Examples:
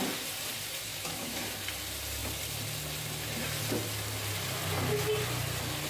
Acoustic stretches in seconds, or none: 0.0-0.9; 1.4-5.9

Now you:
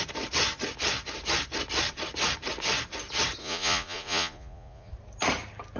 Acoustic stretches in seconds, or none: 0.0-3.4; 4.9-5.8

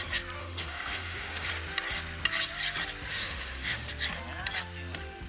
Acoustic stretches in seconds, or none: 0.0-0.4; 1.5-3.1; 3.9-5.3

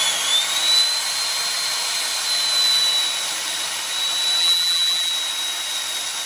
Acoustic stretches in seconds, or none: 0.0-4.4; 5.1-6.3